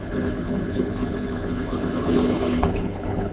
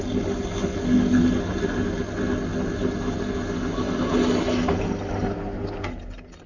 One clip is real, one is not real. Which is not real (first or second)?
first